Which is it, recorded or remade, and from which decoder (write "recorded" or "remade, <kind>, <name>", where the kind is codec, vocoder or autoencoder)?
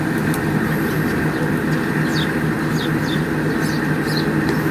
recorded